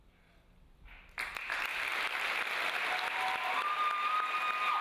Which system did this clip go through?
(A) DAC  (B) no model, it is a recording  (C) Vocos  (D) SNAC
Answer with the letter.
B